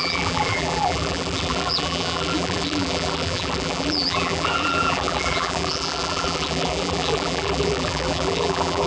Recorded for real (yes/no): no